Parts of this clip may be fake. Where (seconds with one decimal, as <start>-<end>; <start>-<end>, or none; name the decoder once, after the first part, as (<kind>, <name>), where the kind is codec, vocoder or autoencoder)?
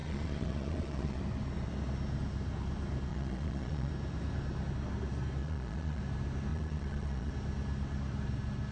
0.0-1.2 (vocoder, Vocos); 3.1-3.9; 5.4-6.0; 6.5-7.3